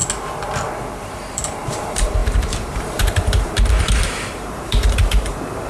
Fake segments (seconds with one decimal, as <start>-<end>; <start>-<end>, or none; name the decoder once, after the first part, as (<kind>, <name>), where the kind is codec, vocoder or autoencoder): 1.0-5.7 (vocoder, BigVGAN v2)